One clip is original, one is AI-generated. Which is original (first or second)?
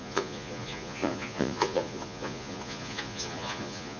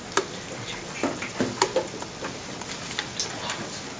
second